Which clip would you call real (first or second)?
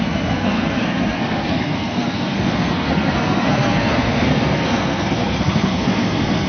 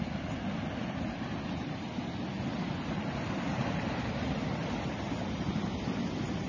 second